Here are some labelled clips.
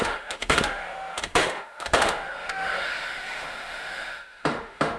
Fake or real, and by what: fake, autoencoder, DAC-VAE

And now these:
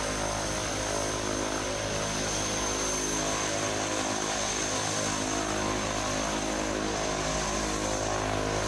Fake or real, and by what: real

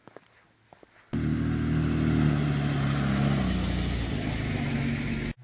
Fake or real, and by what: real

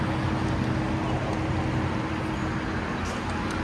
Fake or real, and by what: real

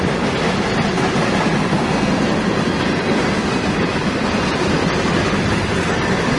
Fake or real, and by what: real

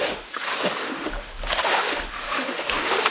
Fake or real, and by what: fake, autoencoder, DAC-VAE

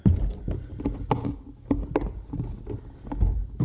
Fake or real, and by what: real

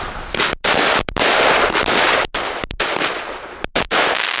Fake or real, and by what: real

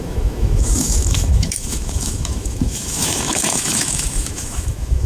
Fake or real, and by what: fake, autoencoder, DAC-VAE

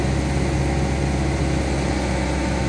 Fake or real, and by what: real